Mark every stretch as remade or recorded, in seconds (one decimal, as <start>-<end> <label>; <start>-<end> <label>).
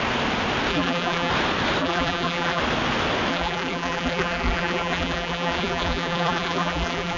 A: 0.0-0.7 recorded; 0.7-1.3 remade; 1.3-1.8 recorded; 1.8-2.6 remade; 2.6-3.3 recorded; 3.3-7.2 remade